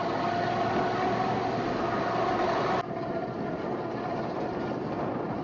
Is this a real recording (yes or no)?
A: yes